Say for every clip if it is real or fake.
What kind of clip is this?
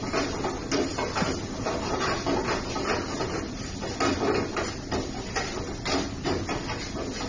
real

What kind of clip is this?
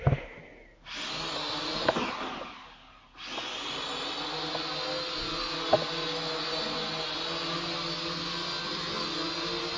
real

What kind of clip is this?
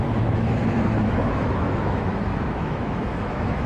fake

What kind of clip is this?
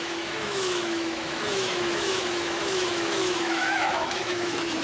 fake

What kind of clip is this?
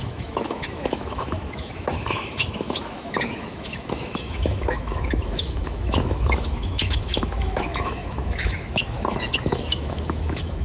fake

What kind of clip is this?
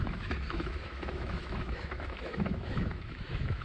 fake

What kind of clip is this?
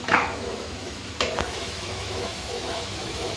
fake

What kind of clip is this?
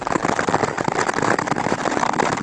real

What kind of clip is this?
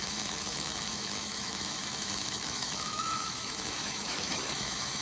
fake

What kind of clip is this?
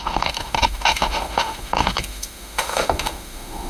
fake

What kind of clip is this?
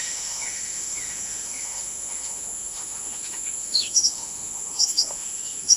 fake